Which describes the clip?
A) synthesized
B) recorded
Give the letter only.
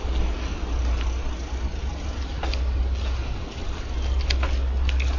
B